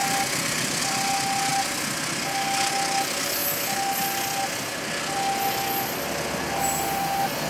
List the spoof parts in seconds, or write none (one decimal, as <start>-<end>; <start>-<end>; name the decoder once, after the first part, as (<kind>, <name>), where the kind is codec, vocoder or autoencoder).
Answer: none